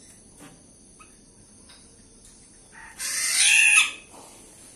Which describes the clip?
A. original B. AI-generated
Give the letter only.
A